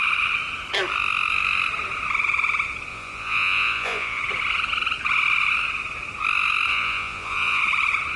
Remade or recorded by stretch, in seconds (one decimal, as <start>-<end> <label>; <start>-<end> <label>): 0.0-2.9 recorded; 2.9-4.2 remade; 4.2-6.7 recorded; 6.7-7.6 remade; 7.6-8.2 recorded